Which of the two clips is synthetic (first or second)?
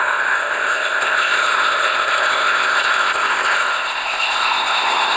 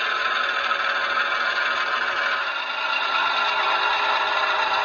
first